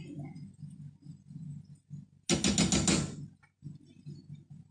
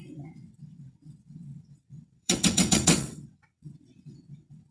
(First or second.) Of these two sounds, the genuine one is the first